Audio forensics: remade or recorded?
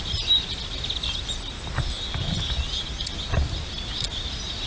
recorded